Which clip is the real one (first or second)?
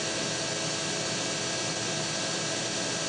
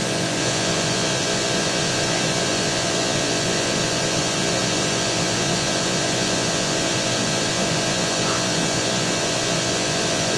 first